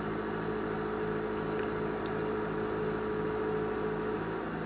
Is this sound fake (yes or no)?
no